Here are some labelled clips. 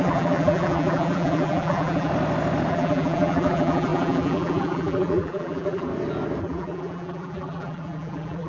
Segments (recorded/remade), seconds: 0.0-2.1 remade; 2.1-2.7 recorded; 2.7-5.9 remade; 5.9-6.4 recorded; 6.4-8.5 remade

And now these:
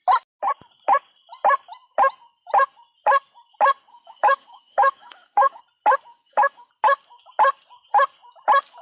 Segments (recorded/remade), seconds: 0.0-3.9 recorded; 3.9-5.6 remade; 5.6-6.1 recorded; 6.1-6.7 remade; 6.7-8.8 recorded

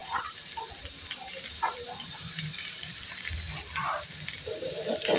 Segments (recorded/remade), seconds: 0.0-5.2 remade

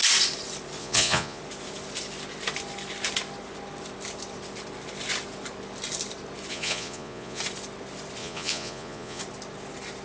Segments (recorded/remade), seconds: 0.0-0.8 recorded; 0.8-1.4 remade; 1.4-6.5 recorded; 6.5-7.4 remade; 7.4-8.2 recorded; 8.2-9.2 remade; 9.2-10.0 recorded

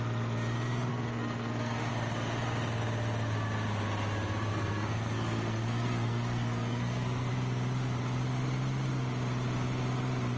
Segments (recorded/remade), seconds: 0.0-0.9 recorded; 0.9-1.9 remade; 1.9-4.5 recorded; 4.5-7.3 remade; 7.3-10.4 recorded

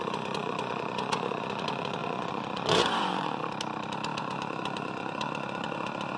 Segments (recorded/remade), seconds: 0.0-3.4 remade; 3.4-4.2 recorded; 4.2-6.2 remade

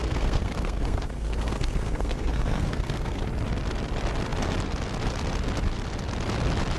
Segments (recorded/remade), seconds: 0.0-3.2 remade; 3.2-6.8 recorded